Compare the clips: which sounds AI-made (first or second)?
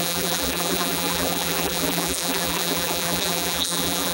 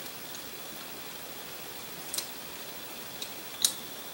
first